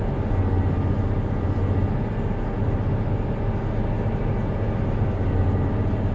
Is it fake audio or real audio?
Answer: real